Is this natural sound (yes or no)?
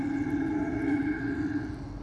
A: yes